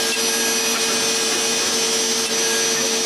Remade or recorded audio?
recorded